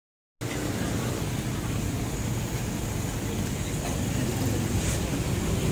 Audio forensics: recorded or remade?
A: recorded